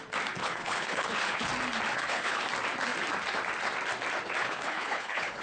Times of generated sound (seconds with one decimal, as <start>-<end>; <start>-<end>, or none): 0.4-1.5; 1.9-2.4; 4.4-5.4